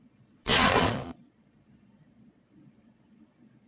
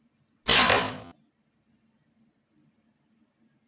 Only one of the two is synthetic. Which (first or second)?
first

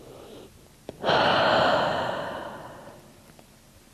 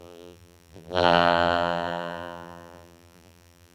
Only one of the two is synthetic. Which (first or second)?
second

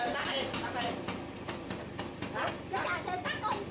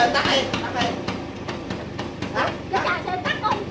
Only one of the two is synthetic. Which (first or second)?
second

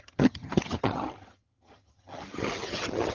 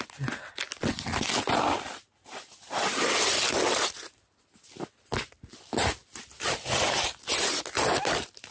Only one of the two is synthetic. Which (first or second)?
first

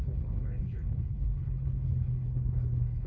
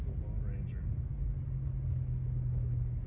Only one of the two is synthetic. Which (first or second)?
first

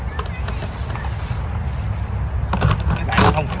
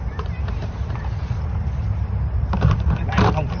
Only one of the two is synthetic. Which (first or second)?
second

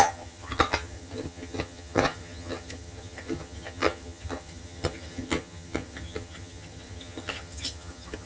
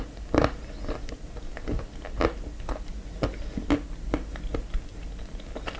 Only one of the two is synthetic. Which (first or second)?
first